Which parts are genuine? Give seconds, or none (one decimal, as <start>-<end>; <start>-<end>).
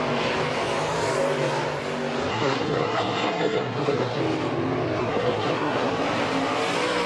0.0-2.3; 4.2-5.0; 5.9-7.1